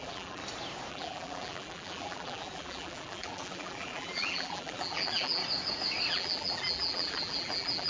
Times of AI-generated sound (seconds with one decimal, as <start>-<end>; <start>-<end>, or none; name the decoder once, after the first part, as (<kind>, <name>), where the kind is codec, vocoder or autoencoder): 0.0-0.4 (vocoder, BigVGAN v2); 0.9-5.4; 6.1-7.9